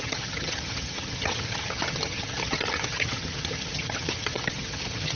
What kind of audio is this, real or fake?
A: fake